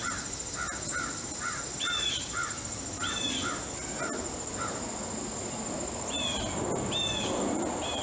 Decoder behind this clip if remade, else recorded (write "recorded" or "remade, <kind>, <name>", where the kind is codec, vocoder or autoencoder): recorded